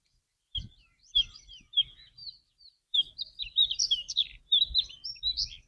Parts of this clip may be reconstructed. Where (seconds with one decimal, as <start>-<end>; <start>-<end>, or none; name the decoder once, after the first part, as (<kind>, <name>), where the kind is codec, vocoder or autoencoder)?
0.0-5.7 (vocoder, BigVGAN v2)